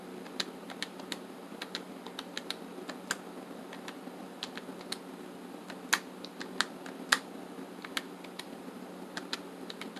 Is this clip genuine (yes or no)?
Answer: yes